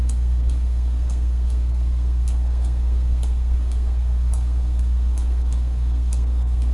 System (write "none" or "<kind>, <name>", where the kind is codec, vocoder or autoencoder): codec, SNAC